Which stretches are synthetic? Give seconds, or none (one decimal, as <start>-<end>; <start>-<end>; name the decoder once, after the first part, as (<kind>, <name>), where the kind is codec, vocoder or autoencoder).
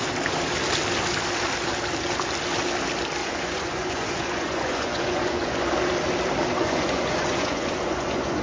3.2-5.7 (vocoder, Vocos); 6.6-8.4